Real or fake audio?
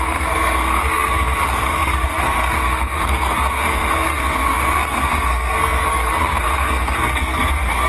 fake